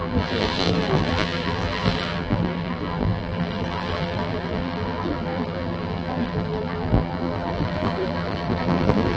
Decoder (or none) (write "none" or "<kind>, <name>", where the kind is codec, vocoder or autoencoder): vocoder, BigVGAN v2